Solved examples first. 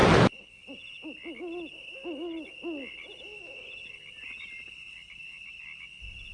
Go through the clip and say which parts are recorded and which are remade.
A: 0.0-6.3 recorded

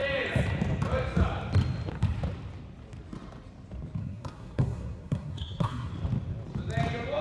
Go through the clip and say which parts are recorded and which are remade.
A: 0.0-4.0 recorded; 4.0-5.9 remade; 5.9-7.2 recorded

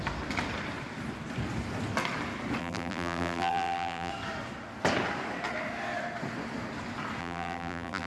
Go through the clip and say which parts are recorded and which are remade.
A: 0.0-2.6 recorded; 2.6-4.1 remade; 4.1-7.2 recorded; 7.2-8.1 remade